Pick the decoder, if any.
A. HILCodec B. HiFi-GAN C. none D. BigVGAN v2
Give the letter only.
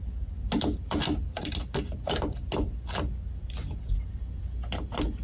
C